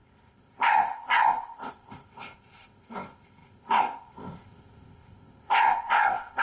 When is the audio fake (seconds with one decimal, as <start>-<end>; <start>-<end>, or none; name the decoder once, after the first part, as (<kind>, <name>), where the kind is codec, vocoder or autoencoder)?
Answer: 0.0-6.4 (codec, ZipCodec)